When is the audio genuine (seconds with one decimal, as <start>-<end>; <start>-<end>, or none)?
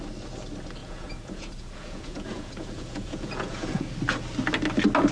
0.0-0.8; 3.9-5.1